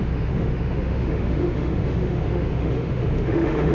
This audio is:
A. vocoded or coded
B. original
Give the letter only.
A